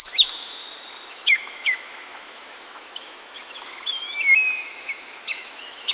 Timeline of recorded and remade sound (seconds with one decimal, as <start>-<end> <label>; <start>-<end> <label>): 0.0-0.6 remade; 0.6-1.1 recorded; 1.1-5.9 remade